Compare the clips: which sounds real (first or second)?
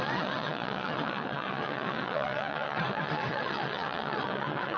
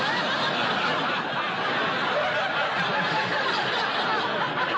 second